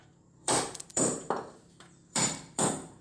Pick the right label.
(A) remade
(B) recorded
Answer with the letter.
A